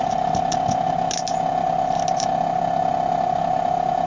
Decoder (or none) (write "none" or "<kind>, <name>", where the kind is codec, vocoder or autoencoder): none